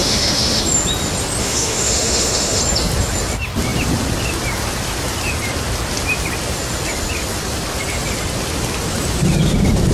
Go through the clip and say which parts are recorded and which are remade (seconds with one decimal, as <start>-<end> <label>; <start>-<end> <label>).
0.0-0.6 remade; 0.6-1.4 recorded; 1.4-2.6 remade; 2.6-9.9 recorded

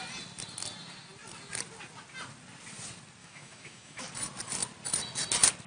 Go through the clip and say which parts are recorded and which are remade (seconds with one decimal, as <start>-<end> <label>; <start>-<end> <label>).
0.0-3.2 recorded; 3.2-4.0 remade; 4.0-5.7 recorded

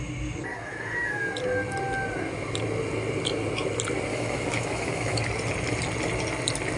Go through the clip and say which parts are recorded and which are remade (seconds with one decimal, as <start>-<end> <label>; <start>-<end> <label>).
0.0-0.5 recorded; 0.5-1.3 remade; 1.3-4.1 recorded; 4.1-5.2 remade; 5.2-6.8 recorded

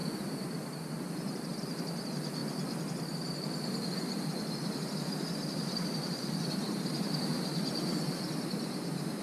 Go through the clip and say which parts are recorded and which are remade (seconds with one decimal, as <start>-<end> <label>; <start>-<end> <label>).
0.0-9.2 recorded